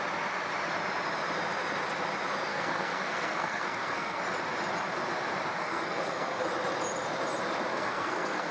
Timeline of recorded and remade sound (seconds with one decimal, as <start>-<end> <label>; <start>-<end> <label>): 0.0-2.5 recorded; 2.5-4.2 remade; 4.2-5.6 recorded; 5.6-6.4 remade; 6.4-7.7 recorded; 7.7-8.5 remade